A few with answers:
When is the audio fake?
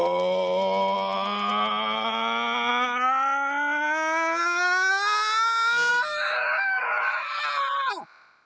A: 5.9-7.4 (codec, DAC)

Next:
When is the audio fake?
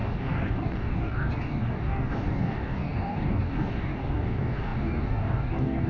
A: 0.0-5.9 (codec, DAC)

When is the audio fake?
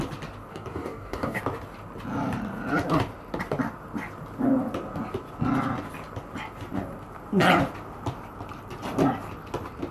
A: 0.5-1.4 (codec, DAC)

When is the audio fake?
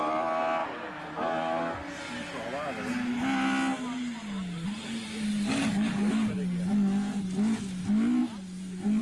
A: 5.5-6.3 (codec, DAC)